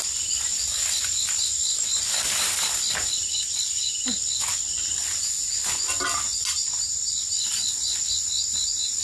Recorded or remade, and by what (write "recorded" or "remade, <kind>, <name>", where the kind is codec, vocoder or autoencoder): recorded